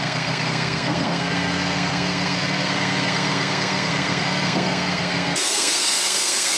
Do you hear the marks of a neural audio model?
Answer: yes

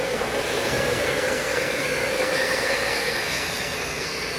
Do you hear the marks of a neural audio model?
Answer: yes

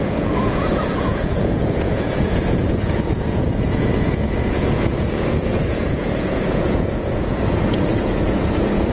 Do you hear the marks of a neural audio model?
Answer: yes